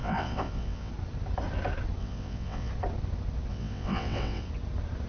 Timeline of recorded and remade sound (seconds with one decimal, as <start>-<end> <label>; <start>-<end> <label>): 0.0-0.9 remade; 0.9-2.0 recorded; 2.0-2.7 remade; 2.7-3.5 recorded; 3.5-4.5 remade; 4.5-5.1 recorded